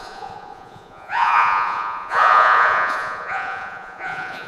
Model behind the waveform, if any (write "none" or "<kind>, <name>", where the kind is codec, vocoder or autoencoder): vocoder, Vocos